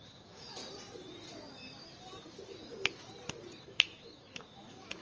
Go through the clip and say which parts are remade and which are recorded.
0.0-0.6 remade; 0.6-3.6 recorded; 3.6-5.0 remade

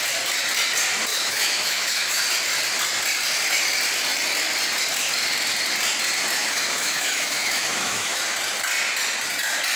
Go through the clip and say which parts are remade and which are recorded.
0.0-1.1 recorded; 1.1-2.2 remade; 2.2-6.4 recorded; 6.4-8.2 remade; 8.2-9.8 recorded